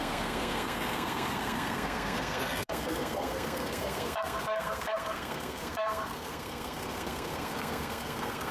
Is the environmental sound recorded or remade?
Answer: remade